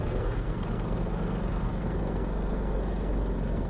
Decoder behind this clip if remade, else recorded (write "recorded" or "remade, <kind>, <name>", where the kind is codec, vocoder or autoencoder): remade, codec, SNAC